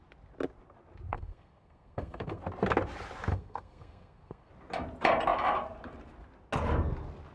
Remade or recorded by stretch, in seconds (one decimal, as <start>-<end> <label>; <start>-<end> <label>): 0.0-1.1 recorded; 1.1-2.4 remade; 2.4-3.3 recorded; 3.3-4.5 remade; 4.5-7.3 recorded